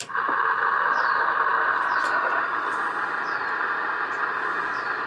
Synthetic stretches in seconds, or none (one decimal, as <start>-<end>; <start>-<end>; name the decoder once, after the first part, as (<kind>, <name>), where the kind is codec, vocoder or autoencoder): none